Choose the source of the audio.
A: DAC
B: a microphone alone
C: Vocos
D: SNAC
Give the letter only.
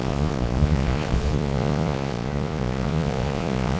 C